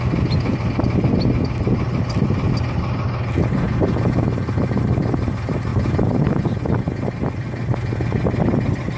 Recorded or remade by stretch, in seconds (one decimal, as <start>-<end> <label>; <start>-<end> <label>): 0.0-9.0 recorded